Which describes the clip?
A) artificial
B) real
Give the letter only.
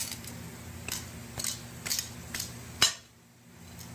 B